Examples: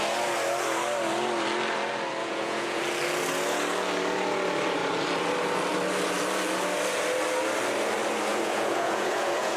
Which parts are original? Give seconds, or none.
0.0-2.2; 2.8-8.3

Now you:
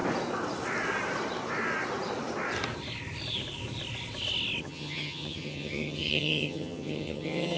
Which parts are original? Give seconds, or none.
0.0-4.6

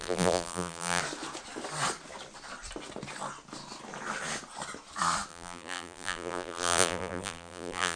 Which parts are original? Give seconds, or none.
1.0-5.3

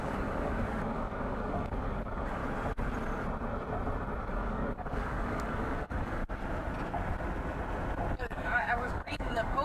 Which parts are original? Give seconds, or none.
2.4-4.2; 6.2-8.1

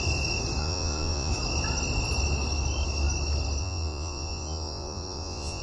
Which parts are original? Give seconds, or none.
0.0-0.6; 1.3-3.6

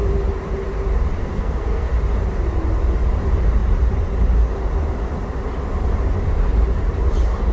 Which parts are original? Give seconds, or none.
0.0-1.2; 1.9-7.5

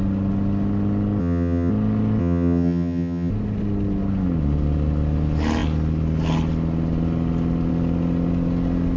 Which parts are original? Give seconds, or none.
0.0-1.2; 1.7-2.2; 3.3-9.0